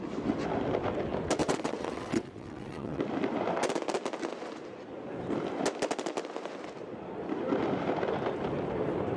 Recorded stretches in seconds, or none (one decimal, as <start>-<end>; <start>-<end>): 0.0-1.4; 3.0-9.2